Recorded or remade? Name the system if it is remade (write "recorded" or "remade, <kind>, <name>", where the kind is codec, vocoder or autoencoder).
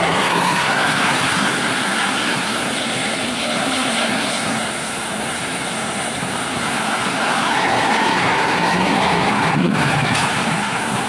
remade, codec, SNAC